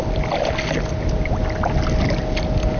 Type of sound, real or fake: real